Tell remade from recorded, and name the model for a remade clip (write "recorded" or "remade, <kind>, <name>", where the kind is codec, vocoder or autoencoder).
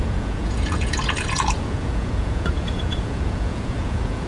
remade, vocoder, Vocos